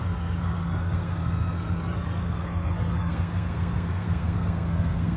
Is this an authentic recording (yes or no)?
no